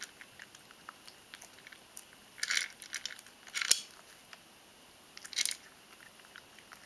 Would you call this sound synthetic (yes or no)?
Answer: no